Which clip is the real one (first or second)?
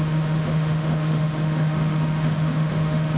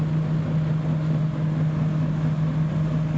second